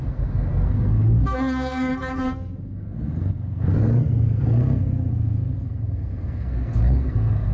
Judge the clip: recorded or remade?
remade